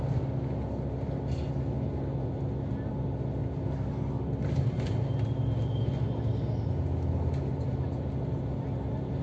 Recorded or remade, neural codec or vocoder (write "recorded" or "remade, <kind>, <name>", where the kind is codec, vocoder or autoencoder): recorded